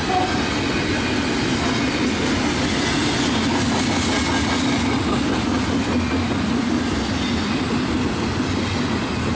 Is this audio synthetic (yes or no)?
no